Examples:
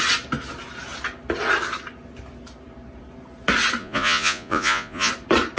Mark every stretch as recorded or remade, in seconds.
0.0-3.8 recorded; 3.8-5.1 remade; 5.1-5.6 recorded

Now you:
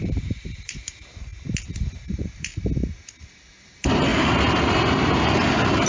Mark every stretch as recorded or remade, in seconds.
0.0-1.3 remade; 1.3-2.0 recorded; 2.0-2.5 remade; 2.5-3.6 recorded; 3.6-5.9 remade

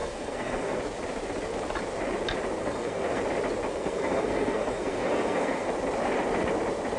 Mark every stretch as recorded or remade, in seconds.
0.0-0.8 remade; 0.8-2.6 recorded; 2.6-3.2 remade; 3.2-3.7 recorded; 3.7-5.7 remade; 5.7-7.0 recorded

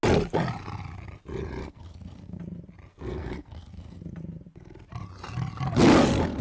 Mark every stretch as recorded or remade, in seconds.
0.0-1.6 recorded; 1.6-2.4 remade; 2.4-2.9 recorded; 2.9-4.0 remade; 4.0-6.4 recorded

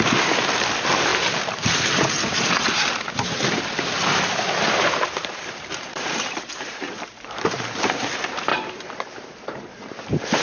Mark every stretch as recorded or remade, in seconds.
0.0-10.4 remade